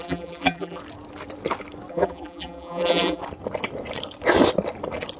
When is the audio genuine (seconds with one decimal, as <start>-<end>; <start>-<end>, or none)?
0.8-1.9; 3.2-5.2